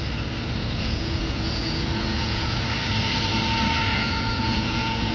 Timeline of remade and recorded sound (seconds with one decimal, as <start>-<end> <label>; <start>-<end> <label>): 0.0-0.6 recorded; 0.6-2.6 remade; 2.6-3.9 recorded; 3.9-5.1 remade